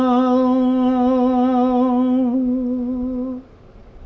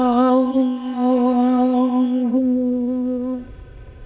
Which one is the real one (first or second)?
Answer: first